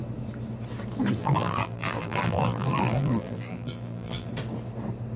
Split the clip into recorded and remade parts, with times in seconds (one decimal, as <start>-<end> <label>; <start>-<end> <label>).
0.0-1.2 recorded; 1.2-4.3 remade; 4.3-5.2 recorded